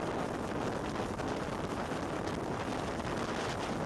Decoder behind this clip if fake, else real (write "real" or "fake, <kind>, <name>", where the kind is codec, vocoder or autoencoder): real